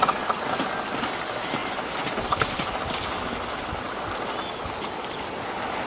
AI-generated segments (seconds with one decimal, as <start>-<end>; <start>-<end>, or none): none